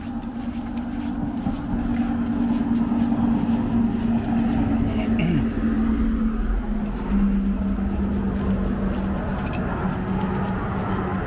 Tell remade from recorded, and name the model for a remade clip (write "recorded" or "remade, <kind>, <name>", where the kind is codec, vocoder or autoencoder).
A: recorded